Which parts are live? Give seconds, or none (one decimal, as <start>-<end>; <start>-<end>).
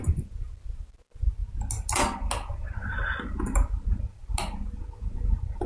0.0-5.7